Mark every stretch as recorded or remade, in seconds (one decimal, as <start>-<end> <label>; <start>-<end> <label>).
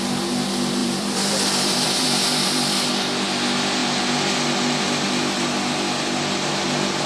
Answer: 0.0-0.8 recorded; 0.8-2.9 remade; 2.9-7.1 recorded